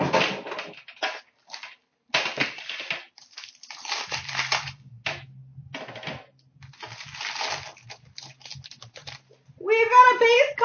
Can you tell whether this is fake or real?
real